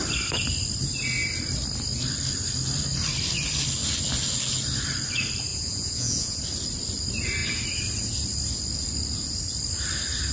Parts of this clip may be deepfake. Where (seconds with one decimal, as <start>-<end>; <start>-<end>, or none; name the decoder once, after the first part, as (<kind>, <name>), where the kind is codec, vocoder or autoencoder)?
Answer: 5.5-6.4 (vocoder, Vocos)